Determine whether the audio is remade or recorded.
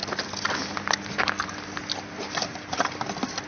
recorded